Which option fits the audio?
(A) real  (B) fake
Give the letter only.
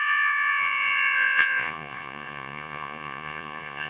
B